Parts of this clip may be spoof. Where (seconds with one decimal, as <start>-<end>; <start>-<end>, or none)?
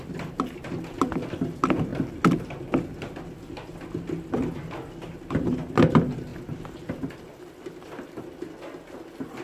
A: none